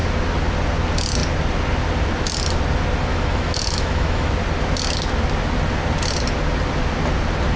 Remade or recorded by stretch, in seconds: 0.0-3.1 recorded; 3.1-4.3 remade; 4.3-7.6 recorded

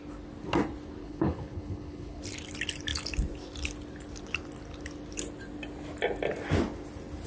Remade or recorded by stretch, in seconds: 0.0-1.0 recorded; 1.0-2.2 remade; 2.2-7.3 recorded

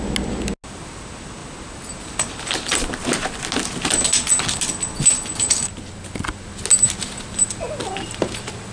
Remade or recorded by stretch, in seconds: 0.0-8.7 recorded

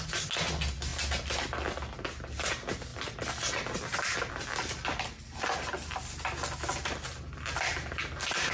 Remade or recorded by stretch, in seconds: 0.0-8.5 recorded

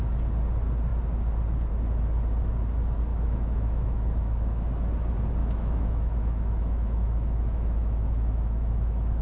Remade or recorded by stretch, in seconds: 0.0-3.1 recorded; 3.1-4.6 remade; 4.6-5.4 recorded; 5.4-9.2 remade

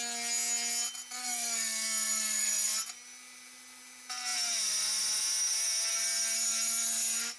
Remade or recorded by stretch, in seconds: 0.0-1.2 recorded; 1.2-2.7 remade; 2.7-7.4 recorded